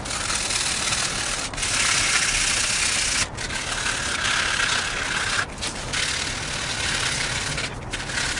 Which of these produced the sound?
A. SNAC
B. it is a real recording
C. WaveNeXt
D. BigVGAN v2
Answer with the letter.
B